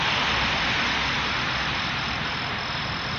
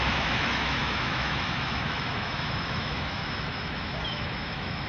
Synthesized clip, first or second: second